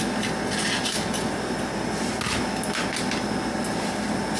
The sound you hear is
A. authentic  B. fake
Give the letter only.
A